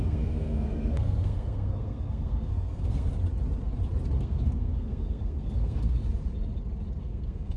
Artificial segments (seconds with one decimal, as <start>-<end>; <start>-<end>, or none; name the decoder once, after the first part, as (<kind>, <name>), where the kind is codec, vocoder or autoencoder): 0.0-3.1 (codec, SNAC); 4.2-6.0; 7.0-7.6